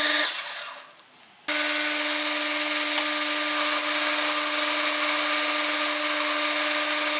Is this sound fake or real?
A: real